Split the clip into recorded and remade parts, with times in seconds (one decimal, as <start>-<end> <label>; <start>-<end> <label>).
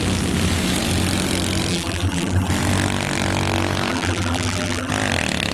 0.0-1.7 recorded; 1.7-2.5 remade; 2.5-3.9 recorded; 3.9-4.9 remade; 4.9-5.5 recorded